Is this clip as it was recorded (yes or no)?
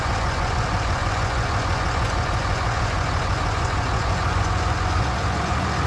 no